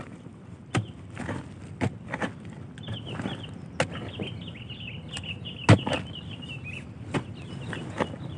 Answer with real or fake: real